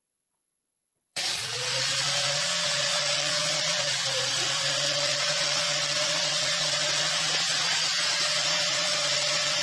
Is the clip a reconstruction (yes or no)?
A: yes